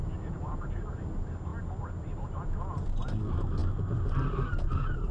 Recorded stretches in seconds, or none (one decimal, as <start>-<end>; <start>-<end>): 0.0-5.1